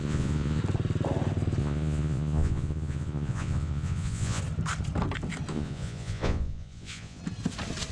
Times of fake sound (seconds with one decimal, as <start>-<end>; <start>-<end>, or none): 0.0-0.6; 1.6-4.4; 5.5-7.2